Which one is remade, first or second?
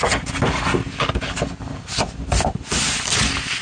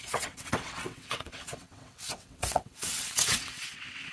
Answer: second